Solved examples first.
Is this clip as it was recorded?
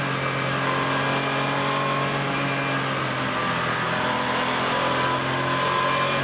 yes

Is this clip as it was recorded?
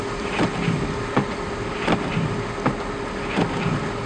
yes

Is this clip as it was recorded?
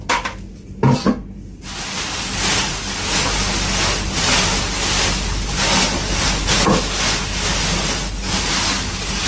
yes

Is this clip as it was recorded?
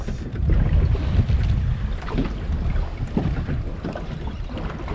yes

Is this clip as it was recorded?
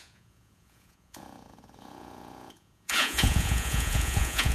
no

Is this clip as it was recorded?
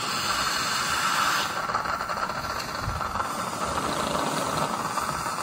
yes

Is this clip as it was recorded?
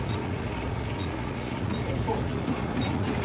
no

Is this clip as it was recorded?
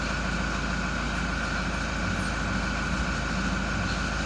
yes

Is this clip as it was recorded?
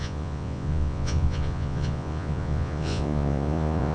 no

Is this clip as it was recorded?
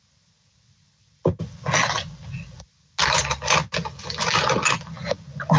yes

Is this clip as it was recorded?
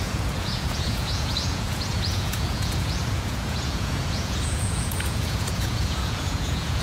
no